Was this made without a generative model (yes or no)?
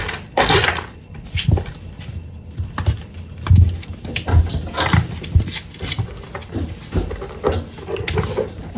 yes